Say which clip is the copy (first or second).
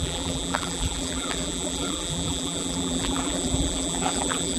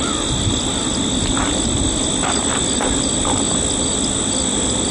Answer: first